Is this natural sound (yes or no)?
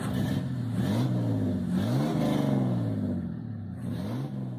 yes